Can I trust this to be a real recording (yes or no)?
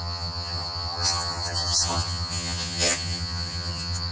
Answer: no